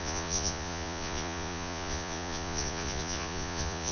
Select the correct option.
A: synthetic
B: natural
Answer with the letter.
A